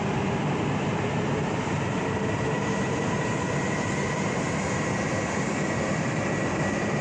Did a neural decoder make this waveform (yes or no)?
no